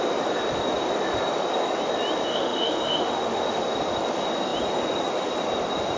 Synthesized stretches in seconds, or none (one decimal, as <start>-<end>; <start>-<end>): 2.3-3.6